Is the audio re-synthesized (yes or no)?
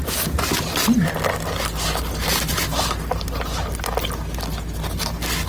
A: no